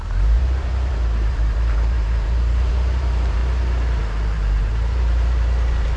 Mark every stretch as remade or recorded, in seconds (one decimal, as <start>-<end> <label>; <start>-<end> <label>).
0.0-3.4 remade; 3.4-4.0 recorded; 4.0-6.0 remade